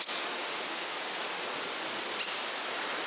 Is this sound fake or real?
real